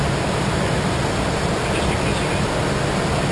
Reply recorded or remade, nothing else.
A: recorded